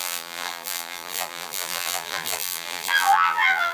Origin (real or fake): fake